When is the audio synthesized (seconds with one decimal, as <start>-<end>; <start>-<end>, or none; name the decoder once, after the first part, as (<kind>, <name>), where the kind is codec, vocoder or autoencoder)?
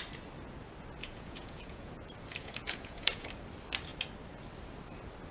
1.0-1.9 (vocoder, Vocos); 2.4-3.3